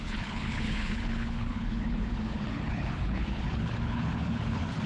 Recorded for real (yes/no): no